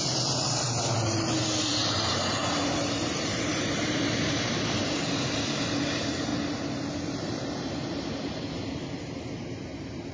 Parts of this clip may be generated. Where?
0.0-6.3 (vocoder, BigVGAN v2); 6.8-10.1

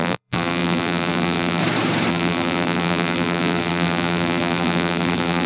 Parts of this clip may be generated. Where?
0.0-1.6 (vocoder, BigVGAN v2); 2.1-5.5

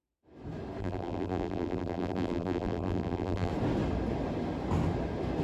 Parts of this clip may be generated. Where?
0.8-3.5 (vocoder, BigVGAN v2)

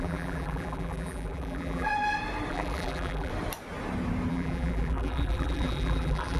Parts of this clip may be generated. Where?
0.0-1.9 (vocoder, BigVGAN v2); 2.5-3.3; 4.3-6.4

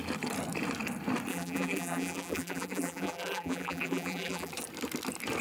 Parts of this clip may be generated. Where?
1.3-4.5 (vocoder, BigVGAN v2)

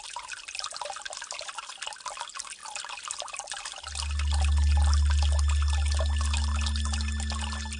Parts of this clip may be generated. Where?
none

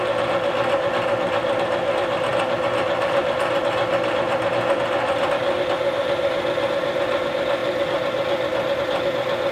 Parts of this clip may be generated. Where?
none